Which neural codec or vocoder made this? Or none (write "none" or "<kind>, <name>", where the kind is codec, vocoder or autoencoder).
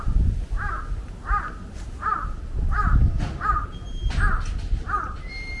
none